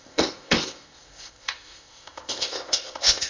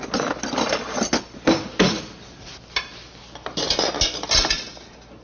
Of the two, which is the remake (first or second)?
first